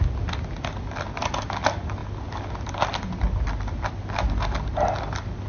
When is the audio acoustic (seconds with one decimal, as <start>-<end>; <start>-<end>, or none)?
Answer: 0.0-5.5